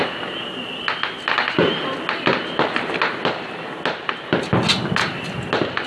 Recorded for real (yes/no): yes